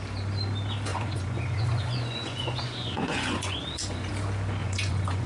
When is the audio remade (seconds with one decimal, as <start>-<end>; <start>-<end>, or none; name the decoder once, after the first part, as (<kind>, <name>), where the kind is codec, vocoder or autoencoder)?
0.9-4.1 (vocoder, Vocos); 4.6-5.3